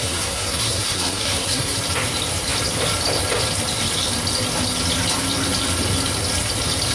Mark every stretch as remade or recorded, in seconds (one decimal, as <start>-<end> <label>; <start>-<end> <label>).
0.0-1.8 remade; 1.8-6.9 recorded